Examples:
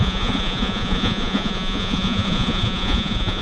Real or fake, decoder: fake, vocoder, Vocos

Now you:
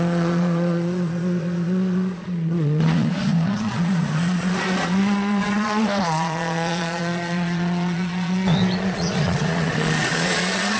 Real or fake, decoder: fake, vocoder, Vocos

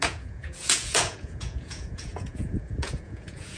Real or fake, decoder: fake, vocoder, Vocos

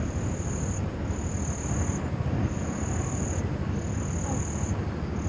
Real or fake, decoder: real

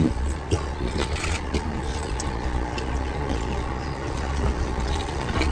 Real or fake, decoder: fake, vocoder, Vocos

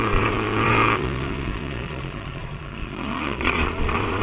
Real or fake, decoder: fake, vocoder, Vocos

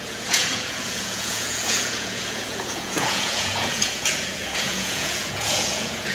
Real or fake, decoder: fake, vocoder, Vocos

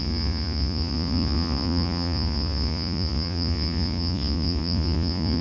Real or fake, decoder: fake, vocoder, Vocos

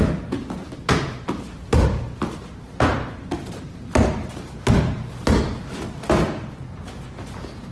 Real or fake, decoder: real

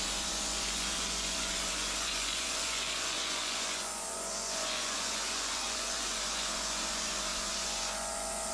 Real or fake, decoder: fake, vocoder, Vocos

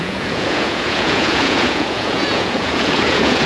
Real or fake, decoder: fake, vocoder, Vocos